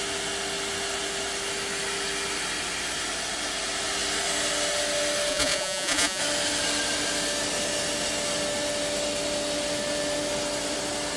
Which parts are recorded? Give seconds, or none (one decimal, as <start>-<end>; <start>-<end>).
0.0-5.3; 6.2-11.2